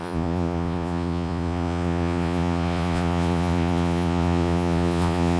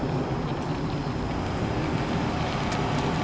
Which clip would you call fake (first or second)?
first